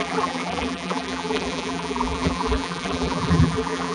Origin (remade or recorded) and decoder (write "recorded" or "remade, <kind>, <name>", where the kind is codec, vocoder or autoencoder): remade, vocoder, BigVGAN v2